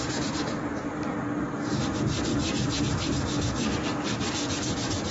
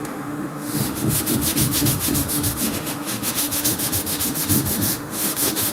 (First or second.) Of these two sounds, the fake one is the second